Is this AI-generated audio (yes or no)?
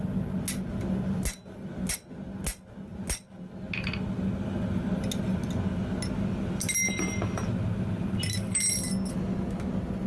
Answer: no